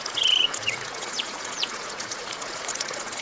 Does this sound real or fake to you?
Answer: fake